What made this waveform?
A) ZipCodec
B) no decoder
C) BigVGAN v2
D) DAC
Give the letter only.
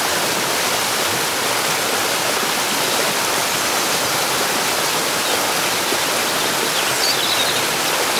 B